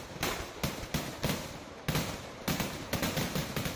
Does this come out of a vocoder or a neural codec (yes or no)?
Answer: no